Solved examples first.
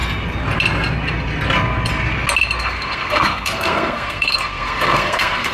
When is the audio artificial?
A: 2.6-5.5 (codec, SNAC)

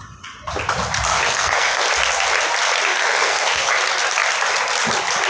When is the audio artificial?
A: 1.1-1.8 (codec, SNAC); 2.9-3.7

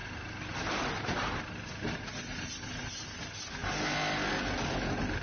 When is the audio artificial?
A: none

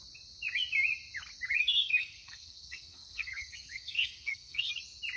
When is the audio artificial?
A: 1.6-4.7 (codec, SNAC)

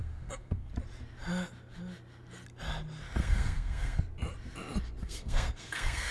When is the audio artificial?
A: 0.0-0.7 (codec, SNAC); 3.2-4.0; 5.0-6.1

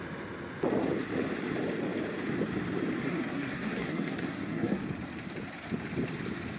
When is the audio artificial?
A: 3.0-4.8 (codec, SNAC)

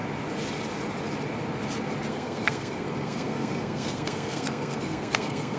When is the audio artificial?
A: 2.1-5.6 (codec, SNAC)

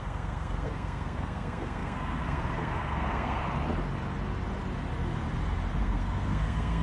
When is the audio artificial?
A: 0.0-3.4 (codec, SNAC); 5.8-6.8